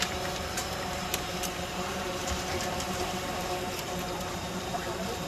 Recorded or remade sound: remade